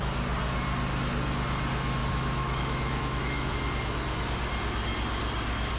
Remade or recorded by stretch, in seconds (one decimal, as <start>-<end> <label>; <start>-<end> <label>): 0.0-2.0 recorded; 2.0-3.5 remade; 3.5-5.8 recorded